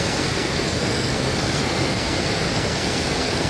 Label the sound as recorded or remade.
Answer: remade